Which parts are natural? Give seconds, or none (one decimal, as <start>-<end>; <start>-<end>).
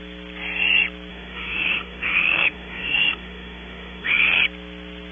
0.0-1.1; 4.2-5.1